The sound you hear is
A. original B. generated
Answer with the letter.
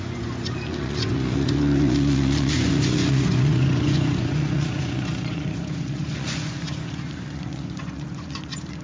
B